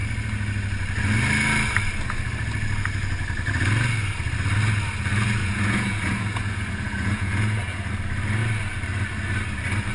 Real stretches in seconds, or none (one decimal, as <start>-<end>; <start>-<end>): 0.0-5.4; 7.9-9.9